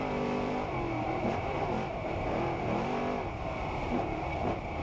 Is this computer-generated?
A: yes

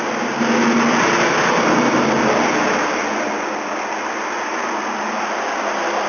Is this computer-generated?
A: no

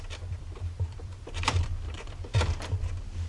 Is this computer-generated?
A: yes